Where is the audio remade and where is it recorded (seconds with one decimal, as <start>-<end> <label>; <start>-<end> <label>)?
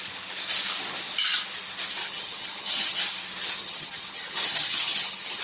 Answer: 0.0-2.0 recorded; 2.0-3.0 remade; 3.0-3.6 recorded; 3.6-5.4 remade